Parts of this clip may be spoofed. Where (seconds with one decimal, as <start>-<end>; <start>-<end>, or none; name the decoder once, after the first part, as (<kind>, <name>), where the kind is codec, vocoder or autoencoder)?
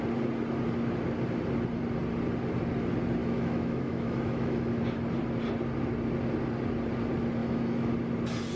3.2-4.8 (autoencoder, DAC-VAE); 7.4-7.9